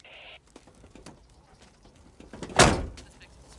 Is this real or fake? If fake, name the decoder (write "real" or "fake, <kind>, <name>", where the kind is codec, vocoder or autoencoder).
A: real